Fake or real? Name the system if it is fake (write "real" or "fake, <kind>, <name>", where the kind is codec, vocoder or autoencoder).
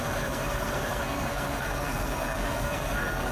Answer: fake, codec, SNAC